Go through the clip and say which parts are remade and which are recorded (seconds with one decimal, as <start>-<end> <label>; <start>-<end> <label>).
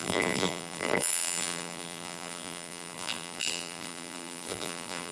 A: 0.0-5.1 remade